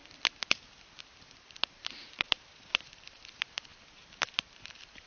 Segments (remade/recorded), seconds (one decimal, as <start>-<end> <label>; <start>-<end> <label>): 0.0-1.0 recorded; 1.0-5.1 remade